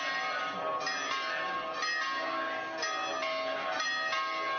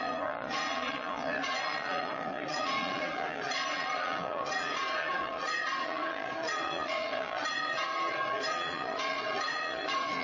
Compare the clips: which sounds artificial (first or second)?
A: second